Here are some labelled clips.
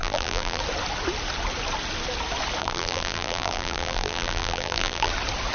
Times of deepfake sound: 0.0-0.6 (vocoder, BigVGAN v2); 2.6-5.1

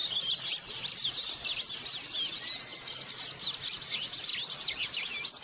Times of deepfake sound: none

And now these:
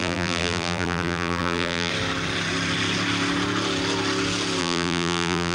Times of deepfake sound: 0.0-1.9 (vocoder, BigVGAN v2); 4.6-5.5

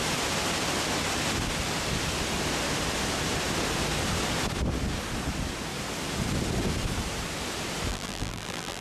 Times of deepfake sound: 7.9-8.8 (vocoder, BigVGAN v2)

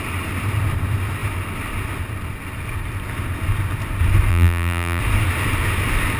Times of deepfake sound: 4.3-5.0 (vocoder, BigVGAN v2)

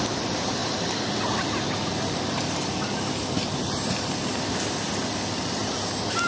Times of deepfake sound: none